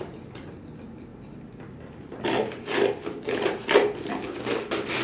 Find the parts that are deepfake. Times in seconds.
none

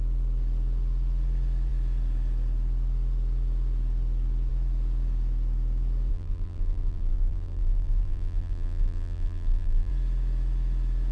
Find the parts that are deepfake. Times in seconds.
6.1-9.9

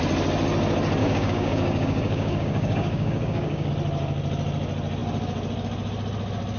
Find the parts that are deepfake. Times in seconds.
1.0-3.7

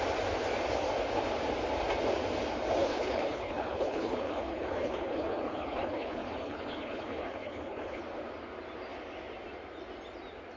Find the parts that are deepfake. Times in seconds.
2.8-8.0

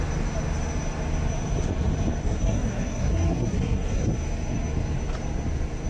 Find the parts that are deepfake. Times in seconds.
2.2-4.1

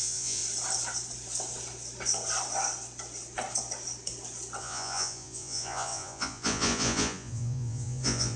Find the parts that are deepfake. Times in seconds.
0.0-0.4; 4.6-8.4

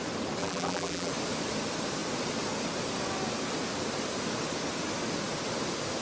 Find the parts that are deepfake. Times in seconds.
0.4-1.1